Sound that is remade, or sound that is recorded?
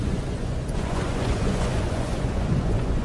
remade